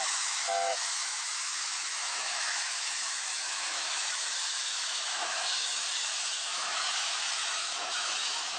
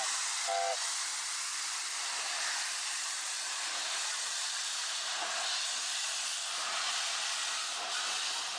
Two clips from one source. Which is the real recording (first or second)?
second